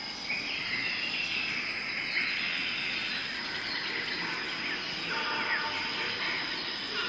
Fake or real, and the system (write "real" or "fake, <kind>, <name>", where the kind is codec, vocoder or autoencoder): real